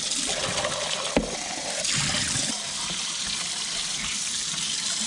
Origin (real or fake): real